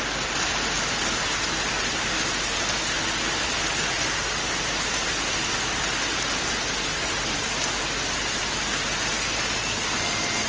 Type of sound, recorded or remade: recorded